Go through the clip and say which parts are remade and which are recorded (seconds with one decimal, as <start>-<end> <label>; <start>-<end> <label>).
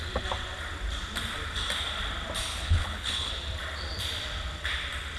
0.0-2.5 recorded; 2.5-3.3 remade; 3.3-5.2 recorded